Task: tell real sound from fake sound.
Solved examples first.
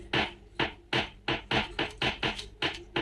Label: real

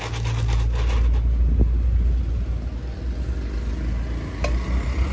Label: real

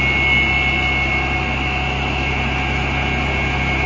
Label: real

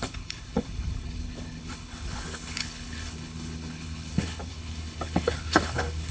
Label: fake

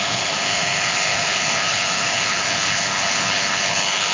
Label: fake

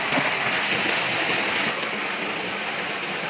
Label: real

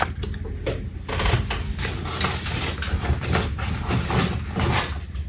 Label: real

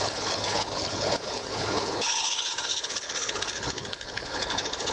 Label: fake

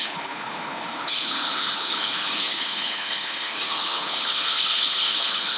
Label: fake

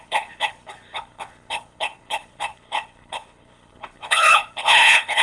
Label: fake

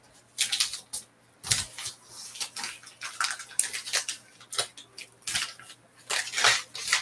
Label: real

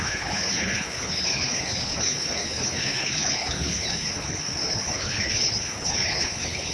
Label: fake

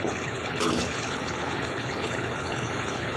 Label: fake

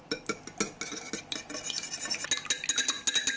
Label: real